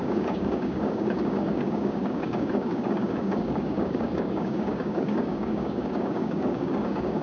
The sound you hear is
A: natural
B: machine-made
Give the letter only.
B